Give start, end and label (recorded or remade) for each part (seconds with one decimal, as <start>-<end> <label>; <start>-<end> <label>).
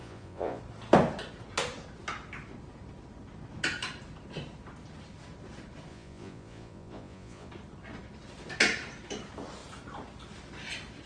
0.0-0.6 remade; 0.6-5.9 recorded; 5.9-7.5 remade; 7.5-11.1 recorded